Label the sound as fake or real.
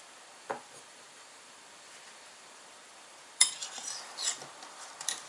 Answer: fake